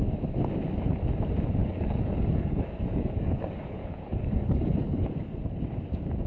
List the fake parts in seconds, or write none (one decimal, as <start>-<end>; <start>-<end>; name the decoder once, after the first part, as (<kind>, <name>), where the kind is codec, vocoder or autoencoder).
1.6-5.4 (codec, DAC)